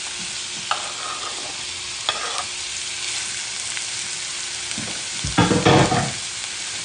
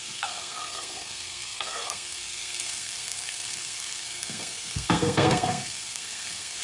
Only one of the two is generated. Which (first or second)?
second